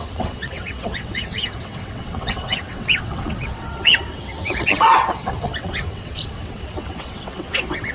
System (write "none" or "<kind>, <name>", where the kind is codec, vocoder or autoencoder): vocoder, WaveNeXt